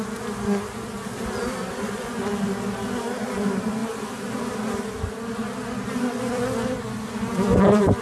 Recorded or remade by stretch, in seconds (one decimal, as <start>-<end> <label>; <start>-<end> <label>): 0.0-1.6 recorded; 1.6-2.2 remade; 2.2-8.0 recorded